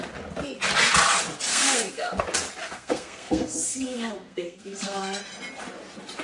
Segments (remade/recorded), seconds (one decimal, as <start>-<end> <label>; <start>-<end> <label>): 0.0-1.5 recorded; 1.5-2.2 remade; 2.2-2.6 recorded; 2.6-5.2 remade; 5.2-6.2 recorded